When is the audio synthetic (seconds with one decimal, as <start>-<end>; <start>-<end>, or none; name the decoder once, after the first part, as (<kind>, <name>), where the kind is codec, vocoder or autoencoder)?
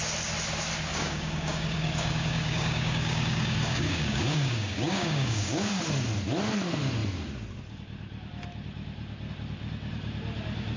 0.9-5.8 (codec, DAC)